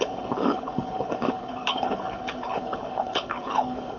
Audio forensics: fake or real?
fake